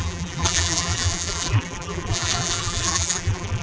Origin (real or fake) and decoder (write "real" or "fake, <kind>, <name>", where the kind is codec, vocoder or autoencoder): fake, vocoder, BigVGAN v2